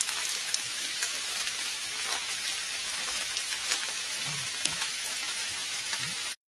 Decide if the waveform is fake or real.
fake